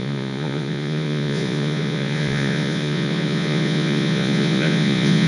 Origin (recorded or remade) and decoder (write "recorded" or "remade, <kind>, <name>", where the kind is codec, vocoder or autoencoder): remade, vocoder, Vocos